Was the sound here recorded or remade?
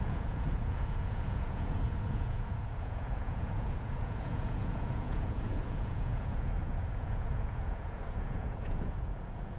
remade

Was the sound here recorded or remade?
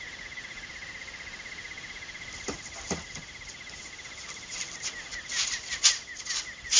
recorded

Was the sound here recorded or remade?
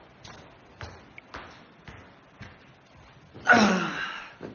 recorded